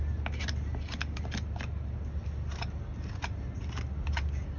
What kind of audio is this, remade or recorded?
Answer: recorded